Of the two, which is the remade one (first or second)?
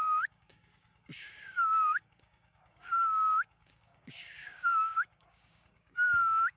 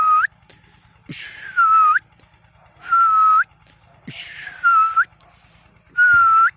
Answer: first